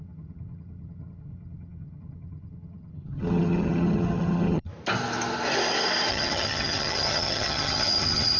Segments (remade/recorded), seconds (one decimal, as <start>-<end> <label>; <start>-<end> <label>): 0.0-4.7 remade; 4.7-6.1 recorded; 6.1-8.4 remade

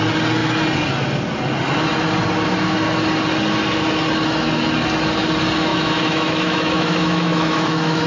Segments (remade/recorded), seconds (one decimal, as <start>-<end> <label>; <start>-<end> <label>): 0.0-5.7 recorded; 5.7-8.1 remade

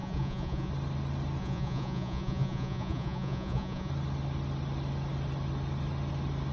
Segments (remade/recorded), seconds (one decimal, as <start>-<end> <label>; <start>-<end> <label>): 0.0-0.7 remade; 0.7-1.4 recorded; 1.4-3.9 remade; 3.9-6.5 recorded

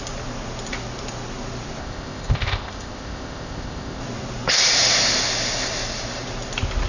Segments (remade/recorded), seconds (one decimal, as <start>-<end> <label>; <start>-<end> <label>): 0.0-1.8 recorded; 1.8-4.0 remade; 4.0-6.9 recorded

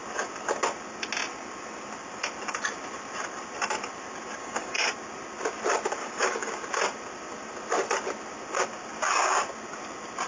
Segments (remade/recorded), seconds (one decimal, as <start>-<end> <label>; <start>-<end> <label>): 0.0-4.4 recorded; 4.4-4.9 remade; 4.9-6.0 recorded; 6.0-6.5 remade; 6.5-10.3 recorded

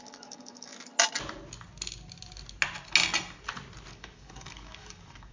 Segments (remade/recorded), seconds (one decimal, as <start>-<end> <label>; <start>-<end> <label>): 0.0-0.7 remade; 0.7-3.9 recorded; 3.9-5.3 remade